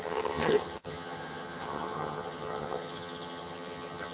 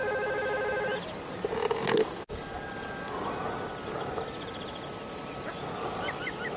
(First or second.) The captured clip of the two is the second